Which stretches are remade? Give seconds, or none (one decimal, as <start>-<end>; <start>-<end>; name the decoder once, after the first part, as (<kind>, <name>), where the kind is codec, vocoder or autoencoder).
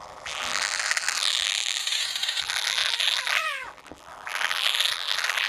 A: 0.0-1.8 (vocoder, BigVGAN v2); 2.4-5.5